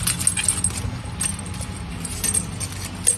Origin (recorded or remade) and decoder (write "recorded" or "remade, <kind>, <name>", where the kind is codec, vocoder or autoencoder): recorded